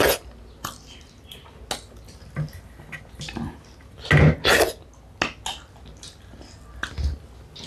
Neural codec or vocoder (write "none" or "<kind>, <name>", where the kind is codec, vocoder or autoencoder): none